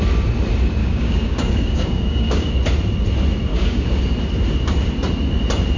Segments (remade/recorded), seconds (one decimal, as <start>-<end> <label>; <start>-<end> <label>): 0.0-0.8 recorded; 0.8-2.5 remade; 2.5-3.5 recorded; 3.5-4.0 remade; 4.0-5.8 recorded